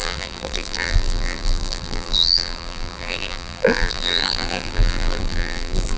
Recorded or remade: remade